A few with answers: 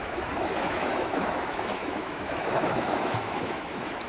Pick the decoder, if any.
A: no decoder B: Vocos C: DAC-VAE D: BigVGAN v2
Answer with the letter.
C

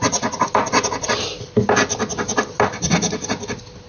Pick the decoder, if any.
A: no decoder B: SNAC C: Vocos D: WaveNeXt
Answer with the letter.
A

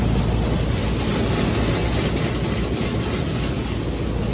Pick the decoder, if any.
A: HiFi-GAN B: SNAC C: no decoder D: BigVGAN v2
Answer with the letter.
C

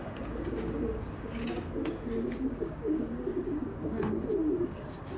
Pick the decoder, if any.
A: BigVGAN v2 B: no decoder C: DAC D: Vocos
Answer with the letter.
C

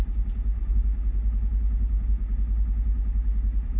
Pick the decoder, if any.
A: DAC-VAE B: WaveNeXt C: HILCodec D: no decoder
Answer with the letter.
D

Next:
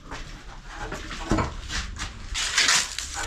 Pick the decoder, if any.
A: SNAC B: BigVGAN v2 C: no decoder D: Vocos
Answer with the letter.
C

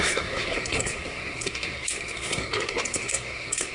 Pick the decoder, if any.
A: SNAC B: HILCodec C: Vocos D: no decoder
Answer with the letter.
A